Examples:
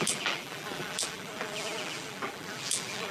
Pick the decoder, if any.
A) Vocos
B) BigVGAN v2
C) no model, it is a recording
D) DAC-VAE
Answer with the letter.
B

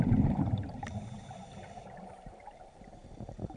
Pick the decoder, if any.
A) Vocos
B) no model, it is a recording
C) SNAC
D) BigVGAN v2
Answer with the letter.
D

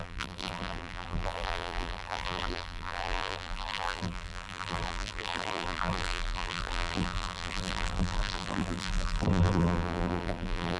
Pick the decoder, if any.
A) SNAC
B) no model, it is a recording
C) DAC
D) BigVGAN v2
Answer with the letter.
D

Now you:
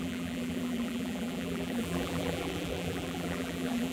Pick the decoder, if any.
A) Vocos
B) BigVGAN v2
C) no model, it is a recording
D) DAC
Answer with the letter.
B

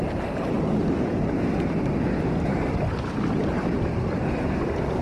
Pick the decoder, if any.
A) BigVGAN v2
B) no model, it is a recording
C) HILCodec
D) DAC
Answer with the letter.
B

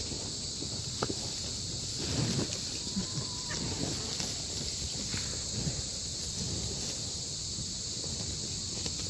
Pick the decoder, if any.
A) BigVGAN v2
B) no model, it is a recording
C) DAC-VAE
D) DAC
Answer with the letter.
B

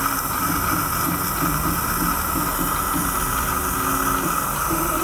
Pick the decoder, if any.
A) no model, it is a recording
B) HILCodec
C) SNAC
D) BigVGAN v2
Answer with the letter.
A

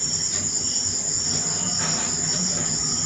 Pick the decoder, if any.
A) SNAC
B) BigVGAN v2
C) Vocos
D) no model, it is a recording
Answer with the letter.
D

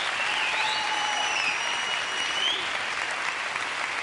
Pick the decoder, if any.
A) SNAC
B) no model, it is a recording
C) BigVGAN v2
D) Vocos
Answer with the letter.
B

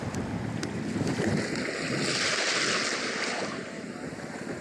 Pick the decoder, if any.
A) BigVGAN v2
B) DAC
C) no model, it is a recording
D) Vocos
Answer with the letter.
C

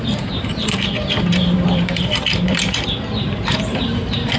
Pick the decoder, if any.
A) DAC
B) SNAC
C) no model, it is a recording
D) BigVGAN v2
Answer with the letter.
D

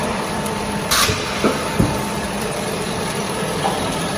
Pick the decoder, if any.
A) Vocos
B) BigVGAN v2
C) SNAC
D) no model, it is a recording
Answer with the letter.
B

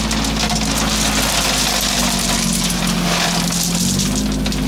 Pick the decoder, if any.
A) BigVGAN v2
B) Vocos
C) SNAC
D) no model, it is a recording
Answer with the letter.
D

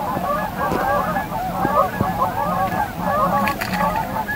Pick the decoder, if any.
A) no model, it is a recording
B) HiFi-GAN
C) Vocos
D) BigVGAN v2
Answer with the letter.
A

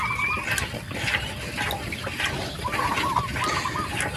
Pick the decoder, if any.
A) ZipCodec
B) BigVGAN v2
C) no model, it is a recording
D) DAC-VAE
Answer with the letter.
C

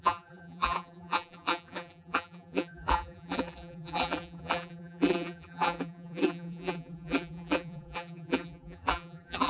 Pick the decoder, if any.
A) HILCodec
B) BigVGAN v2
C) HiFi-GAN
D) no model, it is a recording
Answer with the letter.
B